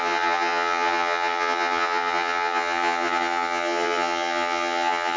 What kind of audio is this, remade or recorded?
remade